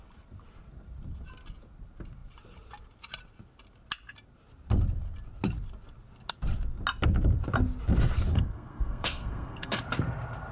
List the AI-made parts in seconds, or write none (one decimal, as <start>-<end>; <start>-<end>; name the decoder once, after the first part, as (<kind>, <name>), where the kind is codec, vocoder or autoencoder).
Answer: 8.3-9.8 (codec, SNAC)